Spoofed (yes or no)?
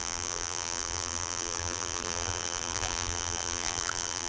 yes